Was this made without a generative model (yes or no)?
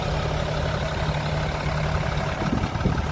yes